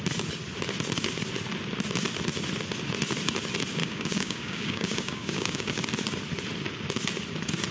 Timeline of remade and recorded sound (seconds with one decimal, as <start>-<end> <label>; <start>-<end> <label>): 0.0-3.8 recorded; 3.8-5.8 remade; 5.8-7.7 recorded